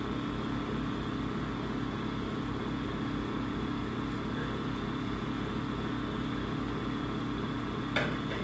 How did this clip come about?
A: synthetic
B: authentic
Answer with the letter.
B